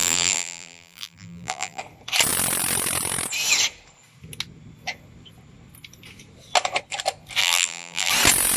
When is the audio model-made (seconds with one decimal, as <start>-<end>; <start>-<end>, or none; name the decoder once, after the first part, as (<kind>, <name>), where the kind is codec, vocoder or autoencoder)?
0.0-1.8 (vocoder, BigVGAN v2); 7.4-8.1